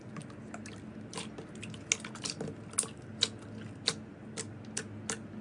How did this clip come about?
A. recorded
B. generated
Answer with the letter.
A